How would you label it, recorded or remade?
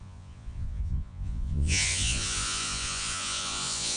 remade